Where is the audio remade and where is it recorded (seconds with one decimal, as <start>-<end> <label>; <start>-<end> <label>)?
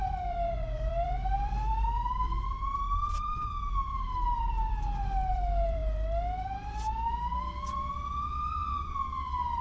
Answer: 0.0-5.8 remade; 5.8-7.9 recorded; 7.9-8.6 remade; 8.6-9.6 recorded